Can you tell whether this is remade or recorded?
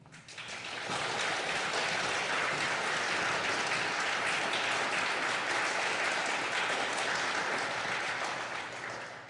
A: recorded